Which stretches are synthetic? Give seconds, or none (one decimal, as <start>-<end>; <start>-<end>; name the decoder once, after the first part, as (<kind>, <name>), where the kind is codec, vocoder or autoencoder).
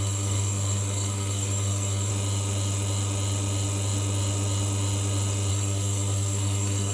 0.0-2.1 (codec, SNAC); 5.5-6.9